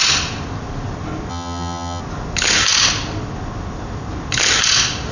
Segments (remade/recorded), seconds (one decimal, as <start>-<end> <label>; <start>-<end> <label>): 0.0-1.3 recorded; 1.3-2.0 remade; 2.0-5.1 recorded